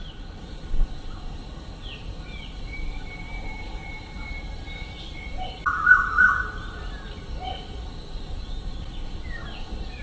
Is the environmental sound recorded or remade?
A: recorded